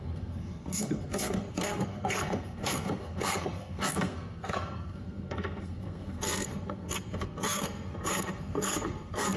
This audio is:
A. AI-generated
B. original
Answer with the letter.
A